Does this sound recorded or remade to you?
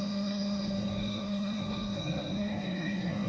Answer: remade